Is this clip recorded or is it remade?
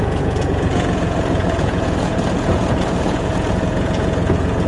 remade